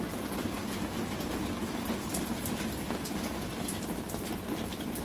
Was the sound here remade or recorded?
recorded